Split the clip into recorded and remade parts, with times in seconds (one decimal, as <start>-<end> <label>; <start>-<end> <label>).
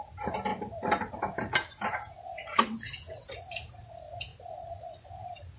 0.0-2.4 recorded; 2.4-3.3 remade; 3.3-5.6 recorded